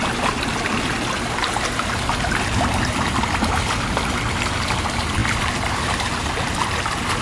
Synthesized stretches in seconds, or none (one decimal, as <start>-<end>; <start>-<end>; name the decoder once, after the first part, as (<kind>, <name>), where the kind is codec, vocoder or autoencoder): none